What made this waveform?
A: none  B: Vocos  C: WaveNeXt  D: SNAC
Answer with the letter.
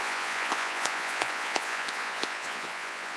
B